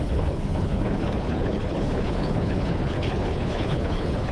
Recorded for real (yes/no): no